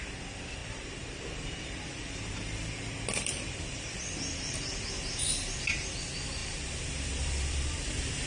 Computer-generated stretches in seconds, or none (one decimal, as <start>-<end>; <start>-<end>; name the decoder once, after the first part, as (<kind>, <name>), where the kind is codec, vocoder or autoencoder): 0.6-4.9 (vocoder, BigVGAN v2); 6.4-7.9